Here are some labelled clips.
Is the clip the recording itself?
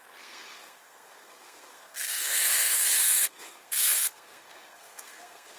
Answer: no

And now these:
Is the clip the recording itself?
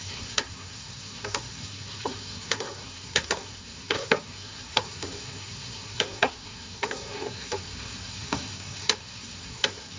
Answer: no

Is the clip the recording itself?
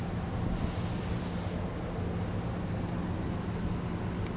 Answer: yes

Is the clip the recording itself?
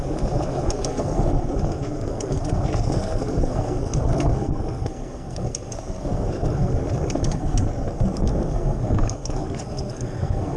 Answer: no